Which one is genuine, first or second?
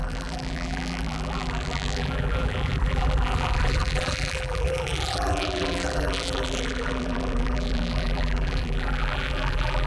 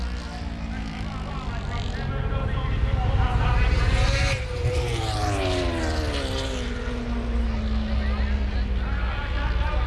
second